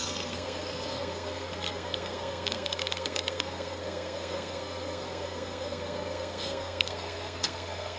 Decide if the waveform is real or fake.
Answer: fake